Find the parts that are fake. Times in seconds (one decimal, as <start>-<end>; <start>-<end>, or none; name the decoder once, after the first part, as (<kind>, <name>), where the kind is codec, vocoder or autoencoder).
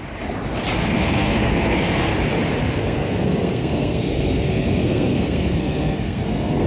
0.8-2.1 (codec, SNAC); 2.6-6.7